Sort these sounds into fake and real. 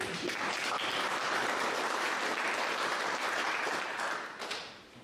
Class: fake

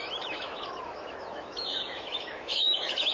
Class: fake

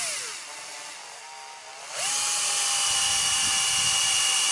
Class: real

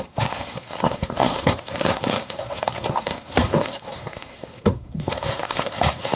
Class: fake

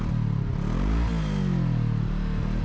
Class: real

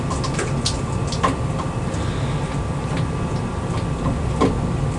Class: real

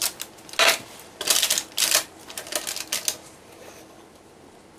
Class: real